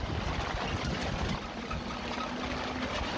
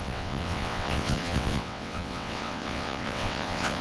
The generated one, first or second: second